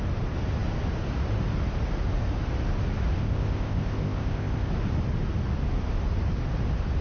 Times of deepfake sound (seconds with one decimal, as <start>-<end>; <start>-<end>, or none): 3.2-4.7